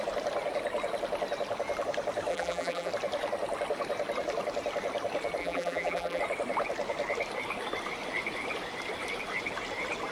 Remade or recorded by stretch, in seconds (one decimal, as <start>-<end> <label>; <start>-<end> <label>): 0.0-2.3 recorded; 2.3-2.9 remade; 2.9-5.4 recorded; 5.4-6.2 remade; 6.2-10.1 recorded